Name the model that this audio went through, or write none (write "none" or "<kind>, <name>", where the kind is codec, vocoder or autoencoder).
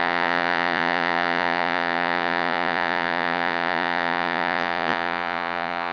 vocoder, Vocos